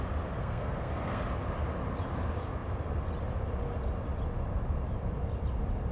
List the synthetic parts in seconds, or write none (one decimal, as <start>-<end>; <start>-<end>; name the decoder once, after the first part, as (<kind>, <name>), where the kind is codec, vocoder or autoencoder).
0.4-1.2 (codec, SNAC)